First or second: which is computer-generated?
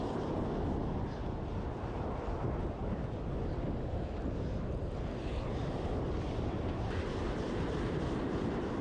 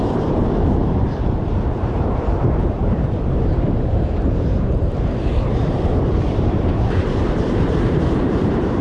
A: second